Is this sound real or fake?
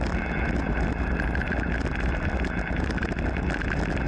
real